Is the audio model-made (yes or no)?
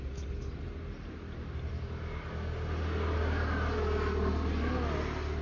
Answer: no